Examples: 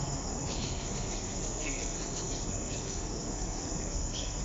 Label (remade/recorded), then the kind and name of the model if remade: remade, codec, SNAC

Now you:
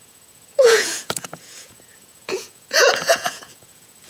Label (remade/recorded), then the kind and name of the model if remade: remade, vocoder, Vocos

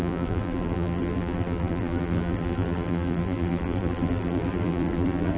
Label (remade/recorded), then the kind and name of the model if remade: remade, vocoder, BigVGAN v2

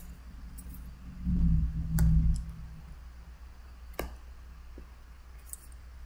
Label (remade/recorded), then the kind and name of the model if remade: recorded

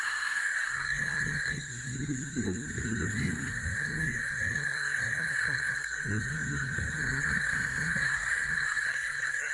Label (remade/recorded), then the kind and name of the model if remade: remade, codec, SNAC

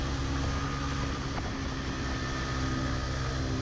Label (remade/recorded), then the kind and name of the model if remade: recorded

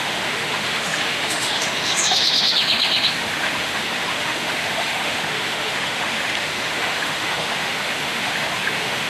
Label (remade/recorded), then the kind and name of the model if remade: remade, autoencoder, DAC-VAE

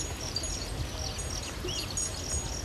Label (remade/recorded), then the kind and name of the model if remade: recorded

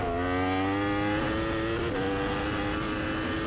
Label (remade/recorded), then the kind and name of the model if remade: recorded